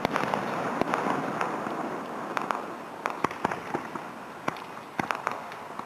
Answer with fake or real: real